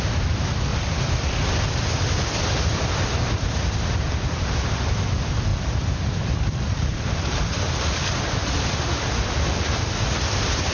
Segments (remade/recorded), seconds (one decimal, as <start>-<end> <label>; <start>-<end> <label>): 0.0-0.7 recorded; 0.7-1.3 remade; 1.3-5.5 recorded; 5.5-6.7 remade; 6.7-10.7 recorded

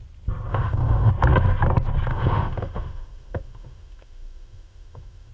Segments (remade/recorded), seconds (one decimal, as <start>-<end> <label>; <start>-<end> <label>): 0.0-0.5 recorded; 0.5-1.1 remade; 1.1-2.1 recorded; 2.1-5.3 remade